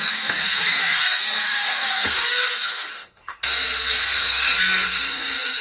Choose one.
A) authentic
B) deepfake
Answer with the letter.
B